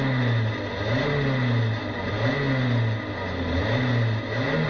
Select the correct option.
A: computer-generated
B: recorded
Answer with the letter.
B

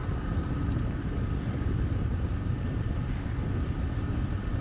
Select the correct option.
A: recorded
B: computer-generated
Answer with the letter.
A